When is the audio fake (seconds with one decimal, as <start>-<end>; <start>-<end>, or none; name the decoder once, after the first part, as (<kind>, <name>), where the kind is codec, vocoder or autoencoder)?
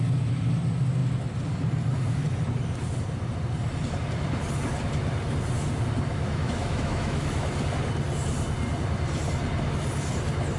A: 6.1-7.5 (autoencoder, DAC-VAE)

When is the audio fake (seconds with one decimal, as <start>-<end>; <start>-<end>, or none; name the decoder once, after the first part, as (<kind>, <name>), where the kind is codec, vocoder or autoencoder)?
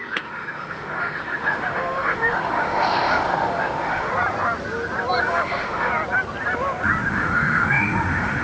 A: 0.0-4.1 (autoencoder, DAC-VAE); 5.3-5.9; 7.1-8.4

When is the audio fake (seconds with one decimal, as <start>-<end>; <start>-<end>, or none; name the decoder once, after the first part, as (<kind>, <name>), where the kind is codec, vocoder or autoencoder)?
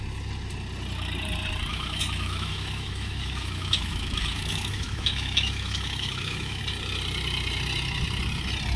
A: 1.7-6.6 (autoencoder, DAC-VAE)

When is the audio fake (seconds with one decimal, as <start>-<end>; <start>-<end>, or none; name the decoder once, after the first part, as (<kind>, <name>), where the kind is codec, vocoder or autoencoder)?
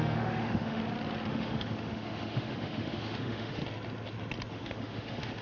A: 0.0-0.8 (autoencoder, DAC-VAE); 1.3-3.6; 4.5-5.4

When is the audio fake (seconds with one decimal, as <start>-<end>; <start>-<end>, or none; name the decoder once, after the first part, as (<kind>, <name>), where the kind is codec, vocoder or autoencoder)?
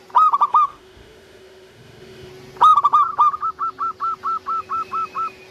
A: 0.5-2.3 (autoencoder, DAC-VAE)